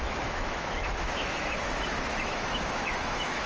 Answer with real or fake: fake